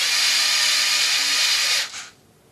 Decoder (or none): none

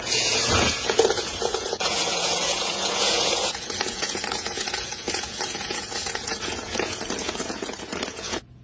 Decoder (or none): vocoder, Vocos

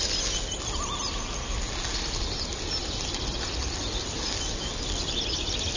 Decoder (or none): none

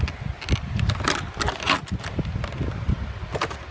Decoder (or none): none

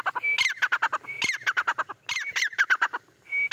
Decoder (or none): none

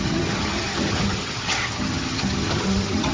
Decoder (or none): vocoder, HiFi-GAN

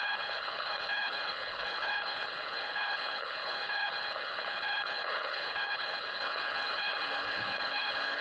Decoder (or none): codec, HILCodec